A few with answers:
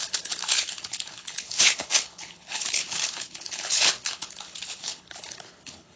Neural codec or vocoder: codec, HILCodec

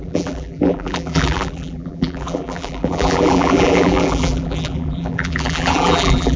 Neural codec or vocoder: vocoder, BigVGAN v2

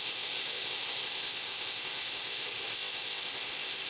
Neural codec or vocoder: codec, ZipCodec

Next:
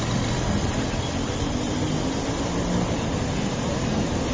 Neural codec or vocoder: none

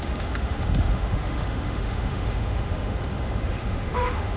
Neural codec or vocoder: autoencoder, DAC-VAE